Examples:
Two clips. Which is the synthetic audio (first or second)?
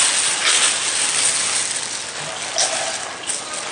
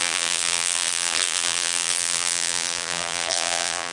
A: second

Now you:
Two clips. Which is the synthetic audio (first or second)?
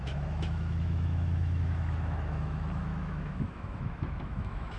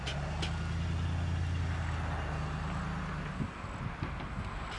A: first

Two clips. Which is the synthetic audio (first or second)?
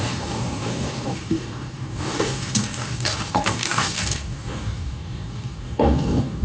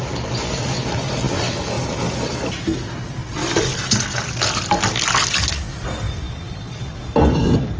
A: first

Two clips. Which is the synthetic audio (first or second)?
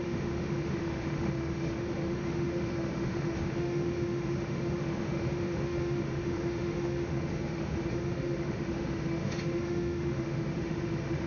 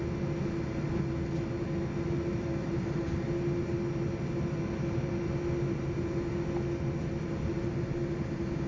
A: first